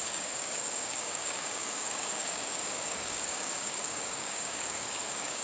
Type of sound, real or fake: fake